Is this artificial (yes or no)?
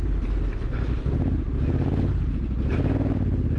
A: no